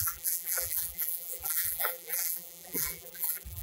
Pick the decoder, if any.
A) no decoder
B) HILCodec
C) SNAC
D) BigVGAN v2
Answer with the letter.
D